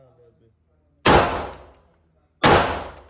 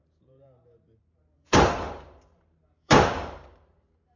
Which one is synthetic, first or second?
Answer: second